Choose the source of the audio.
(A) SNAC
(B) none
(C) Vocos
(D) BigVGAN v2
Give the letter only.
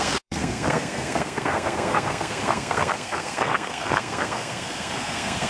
A